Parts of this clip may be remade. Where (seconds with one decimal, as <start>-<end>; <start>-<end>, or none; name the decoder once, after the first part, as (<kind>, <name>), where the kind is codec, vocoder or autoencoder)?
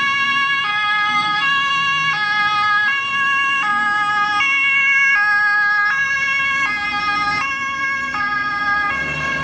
0.7-1.7 (codec, DAC)